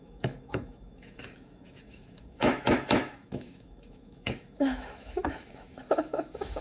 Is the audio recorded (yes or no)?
no